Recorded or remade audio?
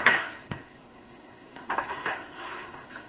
remade